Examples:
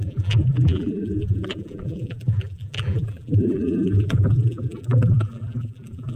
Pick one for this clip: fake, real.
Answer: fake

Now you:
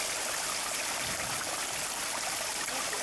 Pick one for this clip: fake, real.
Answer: real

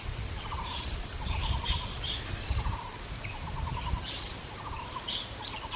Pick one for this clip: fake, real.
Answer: fake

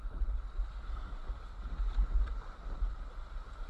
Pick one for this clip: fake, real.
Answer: fake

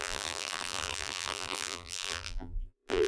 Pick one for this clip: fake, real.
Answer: fake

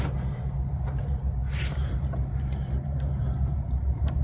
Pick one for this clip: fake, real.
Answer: fake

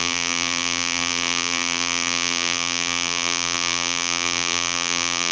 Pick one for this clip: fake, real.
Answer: fake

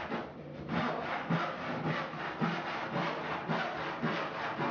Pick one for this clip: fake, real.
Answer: real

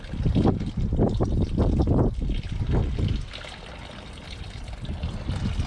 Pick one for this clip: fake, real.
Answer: real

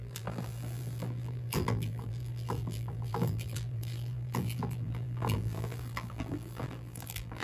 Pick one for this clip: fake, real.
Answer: fake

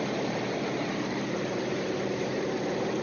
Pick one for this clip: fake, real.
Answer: fake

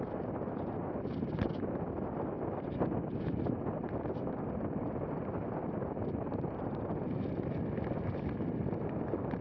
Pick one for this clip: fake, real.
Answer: real